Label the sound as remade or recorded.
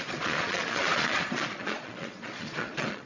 remade